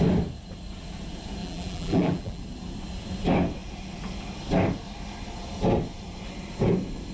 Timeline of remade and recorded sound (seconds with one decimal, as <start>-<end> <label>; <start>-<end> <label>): 0.0-1.4 recorded; 1.4-2.4 remade; 2.4-7.1 recorded